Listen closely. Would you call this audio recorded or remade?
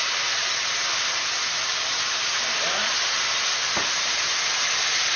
recorded